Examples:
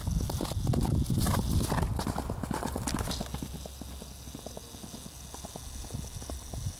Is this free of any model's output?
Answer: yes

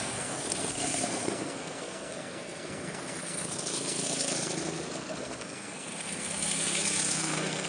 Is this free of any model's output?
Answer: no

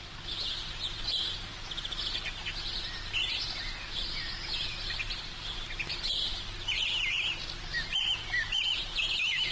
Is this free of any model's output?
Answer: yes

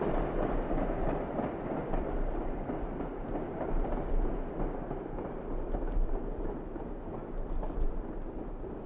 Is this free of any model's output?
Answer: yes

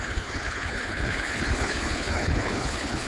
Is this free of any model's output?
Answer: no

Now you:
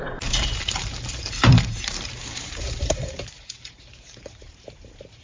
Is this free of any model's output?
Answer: no